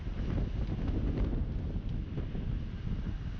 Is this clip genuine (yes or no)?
yes